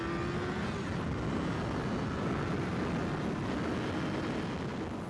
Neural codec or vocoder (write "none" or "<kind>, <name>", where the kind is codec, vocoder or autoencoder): none